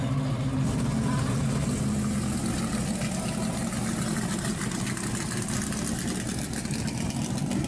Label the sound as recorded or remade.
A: recorded